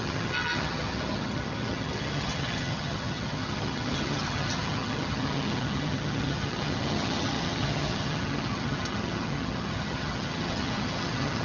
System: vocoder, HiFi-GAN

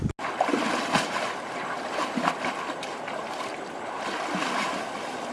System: none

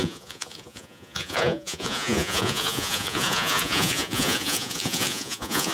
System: vocoder, Vocos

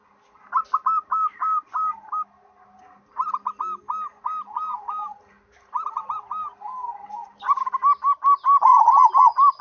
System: none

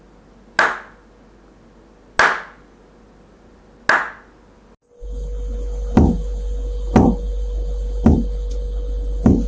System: none